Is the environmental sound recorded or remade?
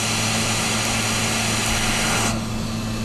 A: recorded